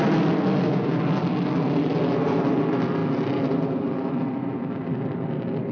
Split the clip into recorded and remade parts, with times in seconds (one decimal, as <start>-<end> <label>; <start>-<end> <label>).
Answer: 0.0-5.7 recorded